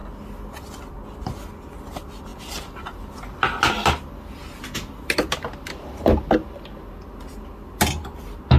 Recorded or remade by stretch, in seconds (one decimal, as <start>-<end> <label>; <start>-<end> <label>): 0.0-8.6 recorded